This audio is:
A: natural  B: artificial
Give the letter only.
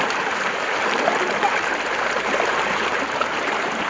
B